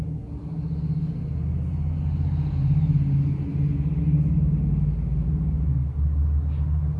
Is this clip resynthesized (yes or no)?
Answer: no